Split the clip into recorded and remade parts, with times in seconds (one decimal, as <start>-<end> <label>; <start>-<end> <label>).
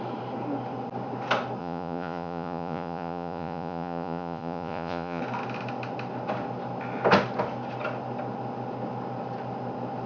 0.0-1.6 recorded; 1.6-5.2 remade; 5.2-10.1 recorded